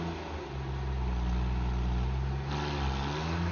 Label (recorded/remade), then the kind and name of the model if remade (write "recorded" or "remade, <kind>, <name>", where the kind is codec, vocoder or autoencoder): recorded